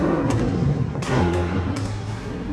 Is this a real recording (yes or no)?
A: no